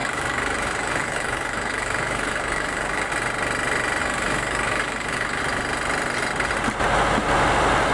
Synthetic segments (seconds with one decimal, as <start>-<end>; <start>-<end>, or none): 0.0-3.1; 4.0-5.4